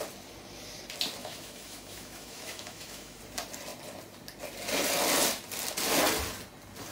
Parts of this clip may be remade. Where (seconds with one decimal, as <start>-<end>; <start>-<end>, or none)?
1.2-3.2